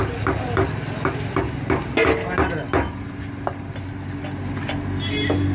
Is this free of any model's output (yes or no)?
yes